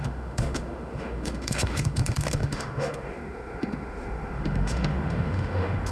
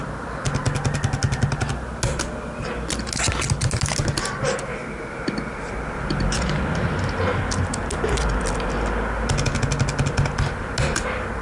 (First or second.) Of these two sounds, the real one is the second